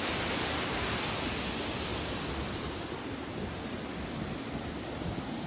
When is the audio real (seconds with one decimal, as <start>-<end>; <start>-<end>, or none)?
0.0-5.5